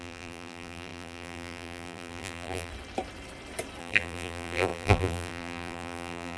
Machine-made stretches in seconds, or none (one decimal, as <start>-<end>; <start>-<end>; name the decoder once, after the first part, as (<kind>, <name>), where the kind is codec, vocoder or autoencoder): 0.0-2.7 (vocoder, BigVGAN v2); 3.8-6.4